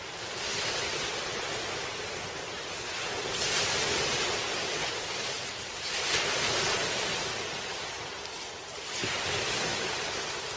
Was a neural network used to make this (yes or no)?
no